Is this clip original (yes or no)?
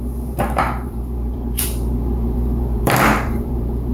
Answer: no